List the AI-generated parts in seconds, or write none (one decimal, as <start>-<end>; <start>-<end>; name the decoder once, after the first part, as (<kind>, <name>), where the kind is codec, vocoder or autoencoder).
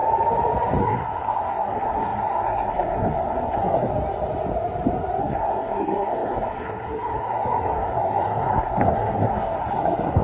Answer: 0.8-3.9 (codec, SNAC); 5.2-10.2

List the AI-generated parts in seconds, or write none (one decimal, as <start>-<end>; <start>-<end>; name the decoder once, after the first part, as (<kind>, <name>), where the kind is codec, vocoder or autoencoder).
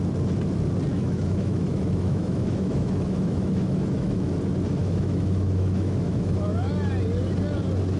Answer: 0.9-4.3 (autoencoder, DAC-VAE); 4.8-6.7